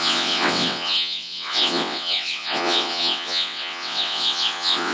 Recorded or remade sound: remade